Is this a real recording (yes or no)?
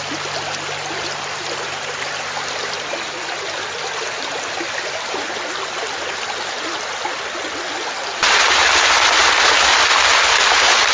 yes